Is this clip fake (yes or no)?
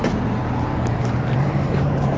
yes